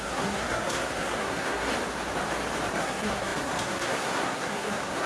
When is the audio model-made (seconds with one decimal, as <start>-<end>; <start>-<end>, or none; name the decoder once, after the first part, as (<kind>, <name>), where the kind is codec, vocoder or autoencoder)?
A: 0.0-1.7 (codec, SNAC); 2.7-5.1